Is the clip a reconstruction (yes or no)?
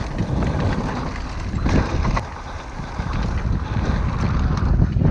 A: no